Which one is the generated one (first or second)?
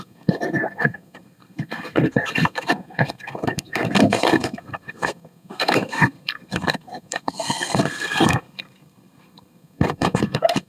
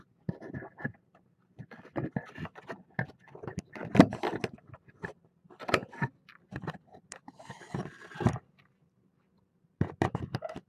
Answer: first